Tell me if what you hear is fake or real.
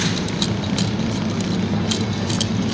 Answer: real